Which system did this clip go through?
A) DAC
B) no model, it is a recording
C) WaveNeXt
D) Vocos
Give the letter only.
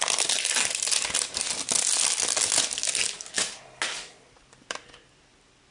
B